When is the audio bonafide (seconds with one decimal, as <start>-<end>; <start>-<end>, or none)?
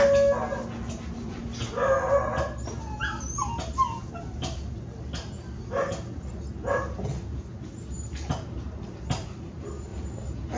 0.0-10.6